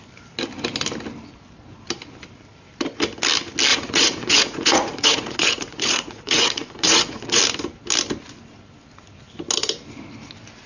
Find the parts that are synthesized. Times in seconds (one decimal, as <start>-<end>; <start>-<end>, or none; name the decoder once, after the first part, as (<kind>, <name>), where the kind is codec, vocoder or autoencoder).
3.7-7.4 (vocoder, Vocos)